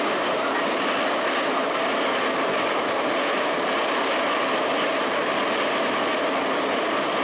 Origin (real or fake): real